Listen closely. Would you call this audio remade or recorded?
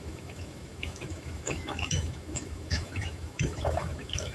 remade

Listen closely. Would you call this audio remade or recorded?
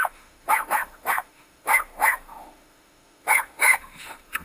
remade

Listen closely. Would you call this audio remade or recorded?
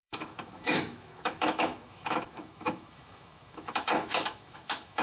remade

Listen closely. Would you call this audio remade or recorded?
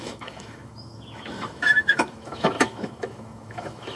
remade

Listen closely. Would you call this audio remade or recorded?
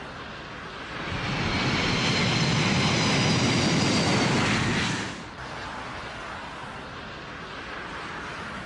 recorded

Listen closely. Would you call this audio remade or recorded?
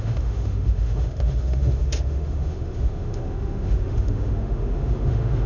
remade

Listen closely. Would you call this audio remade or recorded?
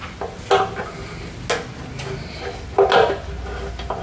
recorded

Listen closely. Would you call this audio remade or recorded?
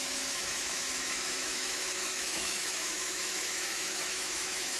remade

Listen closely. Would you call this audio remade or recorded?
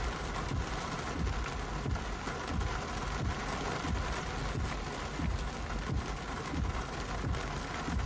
recorded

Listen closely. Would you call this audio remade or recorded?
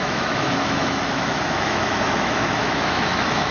remade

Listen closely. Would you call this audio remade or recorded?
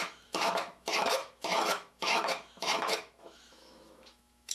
remade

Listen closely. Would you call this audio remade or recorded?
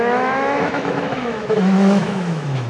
remade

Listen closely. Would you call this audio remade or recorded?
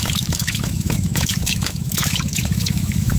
remade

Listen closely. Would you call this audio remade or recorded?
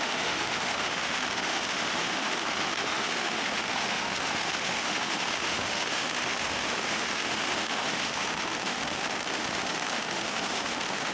remade